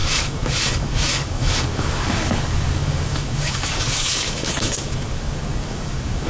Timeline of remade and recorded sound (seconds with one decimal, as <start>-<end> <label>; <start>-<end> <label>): 0.0-6.3 remade